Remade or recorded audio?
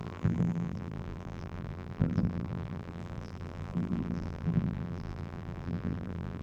remade